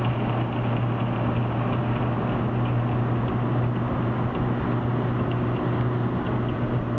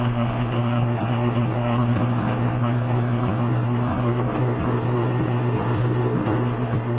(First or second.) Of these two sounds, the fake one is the second